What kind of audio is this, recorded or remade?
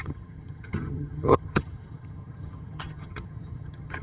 remade